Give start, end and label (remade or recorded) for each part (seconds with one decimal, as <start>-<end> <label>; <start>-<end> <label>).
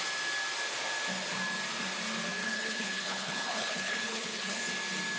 0.0-2.4 recorded; 2.4-4.6 remade; 4.6-5.2 recorded